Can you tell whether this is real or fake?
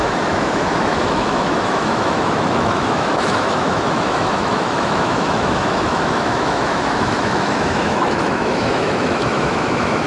fake